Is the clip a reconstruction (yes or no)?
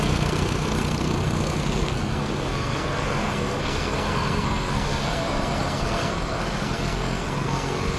yes